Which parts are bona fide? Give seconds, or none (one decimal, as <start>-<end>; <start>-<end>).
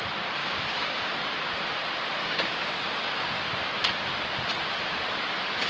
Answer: 0.0-0.4; 1.1-2.2; 3.3-5.7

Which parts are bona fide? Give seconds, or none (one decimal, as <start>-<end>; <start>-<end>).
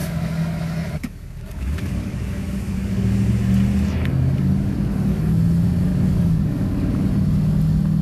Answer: 3.3-4.1; 5.2-5.9; 7.1-8.0